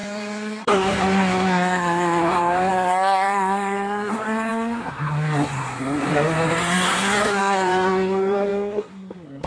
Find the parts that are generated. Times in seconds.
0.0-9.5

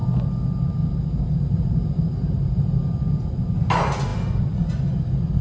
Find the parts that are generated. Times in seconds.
none

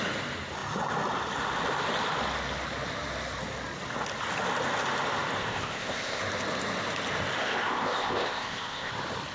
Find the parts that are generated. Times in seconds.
5.4-6.2; 7.4-8.9

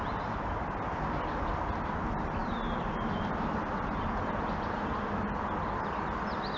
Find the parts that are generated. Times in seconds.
none